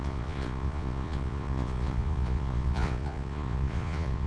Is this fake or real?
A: fake